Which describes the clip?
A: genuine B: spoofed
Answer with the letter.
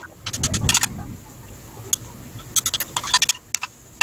A